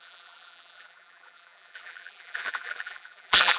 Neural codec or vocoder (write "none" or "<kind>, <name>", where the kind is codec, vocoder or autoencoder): vocoder, BigVGAN v2